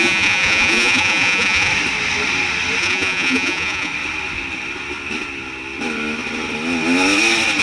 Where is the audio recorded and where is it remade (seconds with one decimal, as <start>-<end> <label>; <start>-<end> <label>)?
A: 0.0-1.7 remade; 1.7-2.8 recorded; 2.8-3.9 remade; 3.9-7.6 recorded